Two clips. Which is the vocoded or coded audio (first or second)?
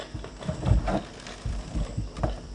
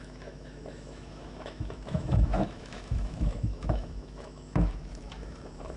second